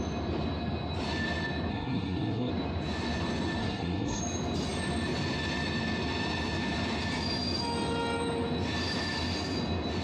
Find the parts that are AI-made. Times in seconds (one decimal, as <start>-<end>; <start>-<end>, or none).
1.7-2.5; 3.6-4.2